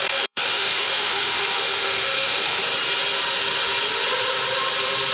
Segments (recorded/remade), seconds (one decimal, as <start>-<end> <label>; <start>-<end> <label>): 0.0-2.6 remade; 2.6-5.1 recorded